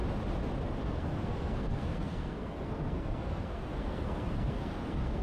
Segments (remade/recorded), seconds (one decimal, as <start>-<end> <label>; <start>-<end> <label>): 0.0-0.8 recorded; 0.8-5.2 remade